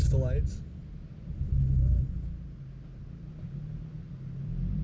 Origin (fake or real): real